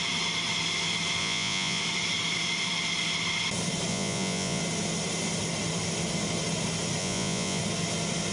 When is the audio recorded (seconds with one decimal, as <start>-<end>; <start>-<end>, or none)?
0.0-1.2; 1.8-3.9; 4.6-7.0; 7.6-8.3